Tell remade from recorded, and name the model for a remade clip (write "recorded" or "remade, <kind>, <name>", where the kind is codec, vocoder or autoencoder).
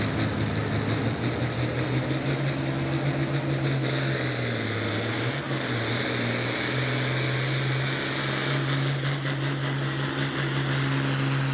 recorded